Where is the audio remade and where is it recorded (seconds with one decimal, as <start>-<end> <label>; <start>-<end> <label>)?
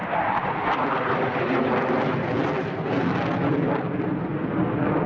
0.0-1.9 remade; 1.9-4.3 recorded; 4.3-5.1 remade